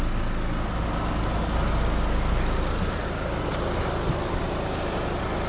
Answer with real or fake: real